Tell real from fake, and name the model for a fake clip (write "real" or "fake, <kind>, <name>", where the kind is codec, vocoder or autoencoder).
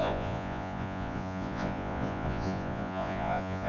fake, vocoder, Vocos